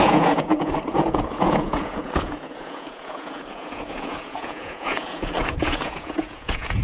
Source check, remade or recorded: remade